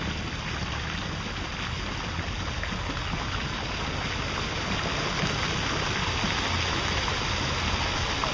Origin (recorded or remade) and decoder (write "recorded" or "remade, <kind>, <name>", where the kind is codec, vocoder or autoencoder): recorded